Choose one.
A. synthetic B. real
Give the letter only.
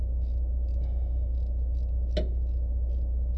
B